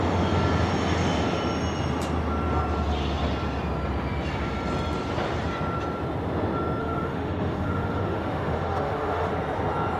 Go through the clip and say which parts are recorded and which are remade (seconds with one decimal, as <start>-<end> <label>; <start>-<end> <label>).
0.0-6.8 recorded; 6.8-9.3 remade; 9.3-10.0 recorded

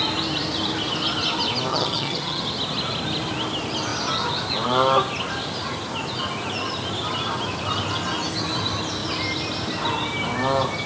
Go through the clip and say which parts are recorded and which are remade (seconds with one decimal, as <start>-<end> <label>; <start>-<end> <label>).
0.0-1.7 recorded; 1.7-2.4 remade; 2.4-10.9 recorded